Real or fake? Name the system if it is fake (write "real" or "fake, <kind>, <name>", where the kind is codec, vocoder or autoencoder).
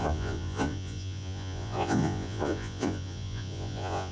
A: fake, vocoder, Vocos